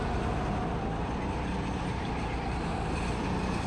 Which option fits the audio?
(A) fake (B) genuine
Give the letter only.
A